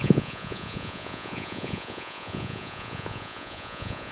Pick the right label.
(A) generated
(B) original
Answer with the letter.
A